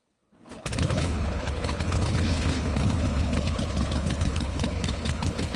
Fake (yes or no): yes